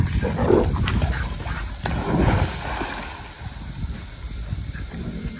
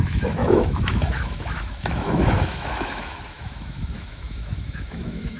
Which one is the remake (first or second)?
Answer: second